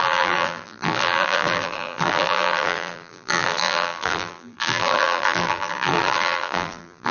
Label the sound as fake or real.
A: fake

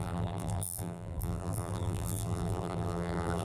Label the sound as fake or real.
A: fake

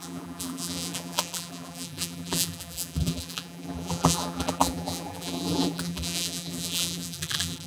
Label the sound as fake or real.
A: fake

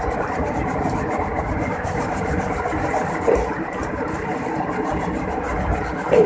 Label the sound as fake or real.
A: fake